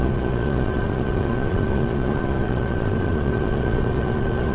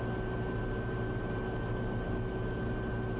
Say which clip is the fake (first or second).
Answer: first